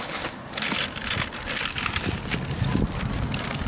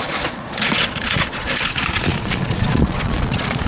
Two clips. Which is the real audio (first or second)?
first